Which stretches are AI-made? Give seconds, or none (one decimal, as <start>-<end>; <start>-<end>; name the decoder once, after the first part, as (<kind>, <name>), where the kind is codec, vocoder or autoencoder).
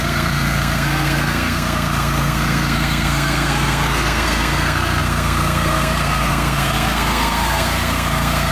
0.0-8.5 (codec, SNAC)